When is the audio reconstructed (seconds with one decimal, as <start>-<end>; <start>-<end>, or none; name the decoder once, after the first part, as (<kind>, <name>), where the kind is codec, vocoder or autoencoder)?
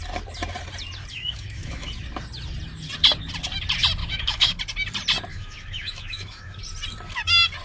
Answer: 1.1-1.9 (autoencoder, DAC-VAE); 4.0-4.6; 5.3-6.6